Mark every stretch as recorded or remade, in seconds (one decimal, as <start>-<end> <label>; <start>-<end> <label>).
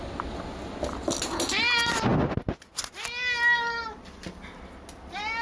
0.0-5.4 recorded